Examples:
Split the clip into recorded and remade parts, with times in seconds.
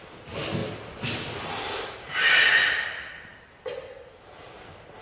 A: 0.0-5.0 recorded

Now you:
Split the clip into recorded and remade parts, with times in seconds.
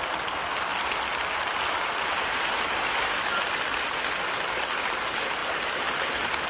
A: 0.0-6.5 recorded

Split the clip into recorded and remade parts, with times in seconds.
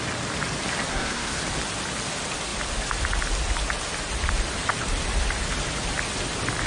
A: 0.0-0.9 recorded; 0.9-1.4 remade; 1.4-6.7 recorded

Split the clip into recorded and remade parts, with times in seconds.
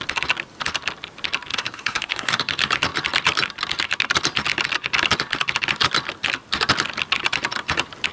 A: 0.0-1.5 recorded; 1.5-2.4 remade; 2.4-8.1 recorded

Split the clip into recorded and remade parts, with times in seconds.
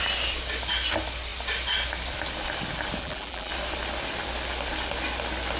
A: 0.0-3.0 recorded; 3.0-3.5 remade; 3.5-5.6 recorded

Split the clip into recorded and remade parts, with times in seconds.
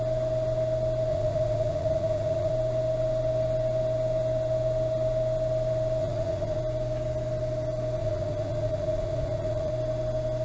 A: 0.0-1.1 recorded; 1.1-2.5 remade; 2.5-6.0 recorded; 6.0-6.6 remade; 6.6-8.0 recorded; 8.0-9.7 remade; 9.7-10.4 recorded